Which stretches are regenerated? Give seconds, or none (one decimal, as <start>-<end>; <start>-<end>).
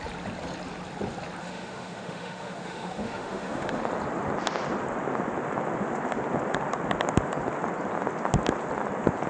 1.4-3.8